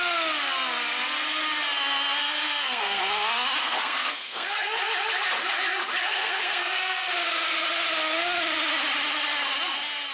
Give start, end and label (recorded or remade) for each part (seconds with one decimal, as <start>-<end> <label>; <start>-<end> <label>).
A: 0.0-2.2 recorded; 2.2-3.0 remade; 3.0-3.6 recorded; 3.6-4.8 remade; 4.8-6.0 recorded; 6.0-7.1 remade; 7.1-10.1 recorded